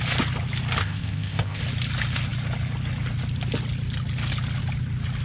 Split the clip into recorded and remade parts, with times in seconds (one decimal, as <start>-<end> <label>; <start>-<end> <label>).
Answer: 0.0-0.8 recorded; 0.8-1.6 remade; 1.6-5.2 recorded